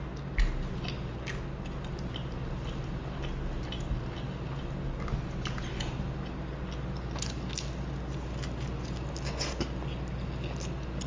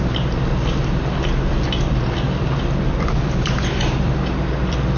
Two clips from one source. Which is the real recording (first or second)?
first